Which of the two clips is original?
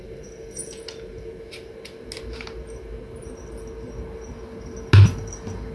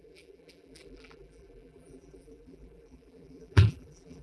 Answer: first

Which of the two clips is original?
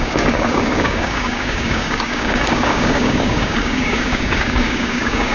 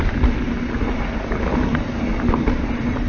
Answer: second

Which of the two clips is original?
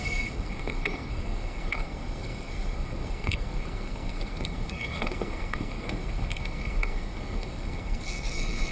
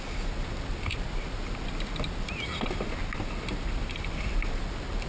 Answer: second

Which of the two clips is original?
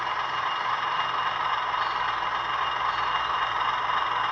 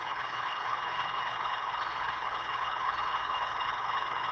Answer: first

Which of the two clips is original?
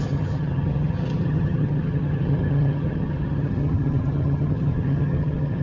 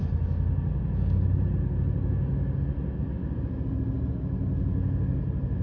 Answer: second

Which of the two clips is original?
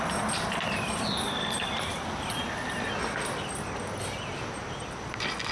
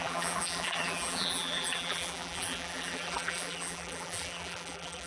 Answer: first